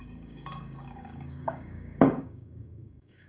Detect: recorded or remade remade